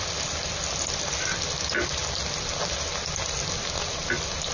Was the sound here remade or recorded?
recorded